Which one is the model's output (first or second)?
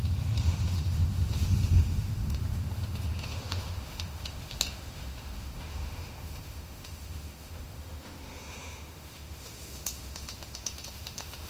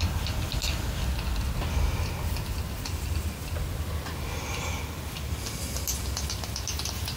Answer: first